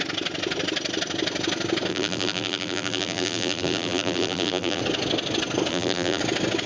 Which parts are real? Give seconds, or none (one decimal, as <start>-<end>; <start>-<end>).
0.0-1.9; 4.8-5.7; 6.2-6.7